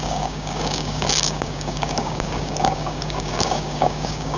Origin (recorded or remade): remade